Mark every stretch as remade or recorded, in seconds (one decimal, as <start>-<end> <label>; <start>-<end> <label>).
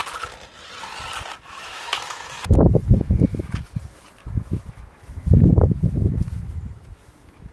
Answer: 0.0-1.3 recorded; 1.3-3.5 remade; 3.5-4.2 recorded; 4.2-7.5 remade